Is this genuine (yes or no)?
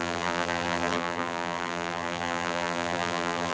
no